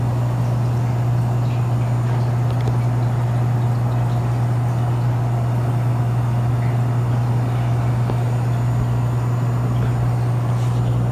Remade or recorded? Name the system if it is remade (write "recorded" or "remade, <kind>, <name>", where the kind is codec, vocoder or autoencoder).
recorded